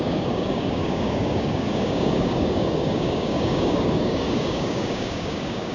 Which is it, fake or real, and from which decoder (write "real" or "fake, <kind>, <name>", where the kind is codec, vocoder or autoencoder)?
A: fake, codec, DAC